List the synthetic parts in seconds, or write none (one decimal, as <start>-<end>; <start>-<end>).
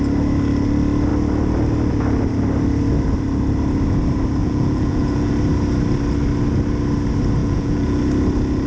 4.4-5.3; 7.4-8.0